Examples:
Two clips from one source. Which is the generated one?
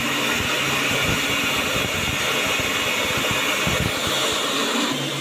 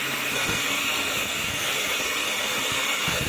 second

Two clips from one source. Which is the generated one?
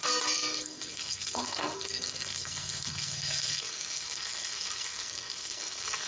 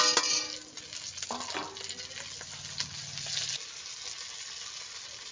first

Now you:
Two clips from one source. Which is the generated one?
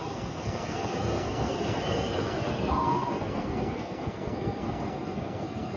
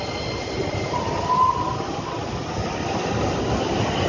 first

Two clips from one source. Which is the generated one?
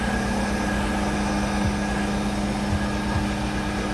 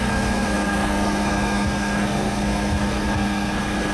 second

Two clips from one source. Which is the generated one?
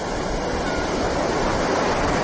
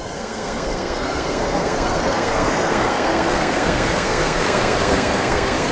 second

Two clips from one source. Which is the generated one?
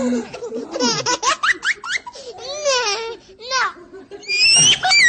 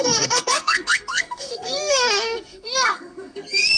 second